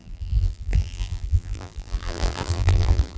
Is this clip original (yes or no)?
no